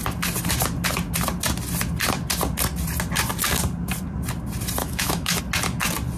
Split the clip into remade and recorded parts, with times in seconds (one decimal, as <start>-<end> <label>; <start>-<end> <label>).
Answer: 0.0-4.8 recorded; 4.8-5.4 remade; 5.4-6.2 recorded